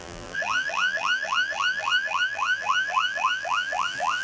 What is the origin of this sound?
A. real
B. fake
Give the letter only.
B